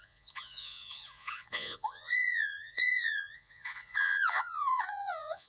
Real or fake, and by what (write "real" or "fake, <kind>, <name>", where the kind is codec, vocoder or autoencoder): fake, vocoder, Vocos